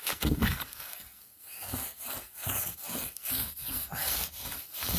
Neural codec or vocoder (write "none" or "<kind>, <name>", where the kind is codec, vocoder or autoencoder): codec, SNAC